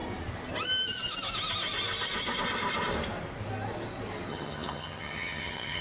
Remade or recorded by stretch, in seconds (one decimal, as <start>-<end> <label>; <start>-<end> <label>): 0.0-4.3 recorded; 4.3-5.8 remade